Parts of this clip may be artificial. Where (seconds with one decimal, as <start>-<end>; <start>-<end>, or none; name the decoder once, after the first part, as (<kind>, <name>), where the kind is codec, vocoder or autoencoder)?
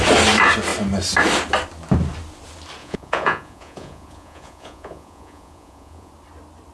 2.8-6.1 (vocoder, Vocos)